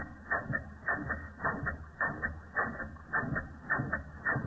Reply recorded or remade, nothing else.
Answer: recorded